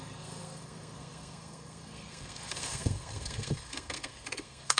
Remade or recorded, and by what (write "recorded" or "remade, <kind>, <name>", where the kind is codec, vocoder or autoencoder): remade, codec, SNAC